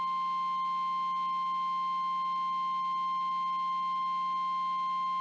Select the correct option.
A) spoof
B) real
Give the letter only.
B